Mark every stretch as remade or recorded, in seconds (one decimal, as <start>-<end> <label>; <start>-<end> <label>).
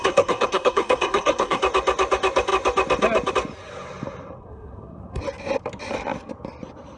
0.0-1.6 remade; 1.6-4.4 recorded; 4.4-5.2 remade; 5.2-7.0 recorded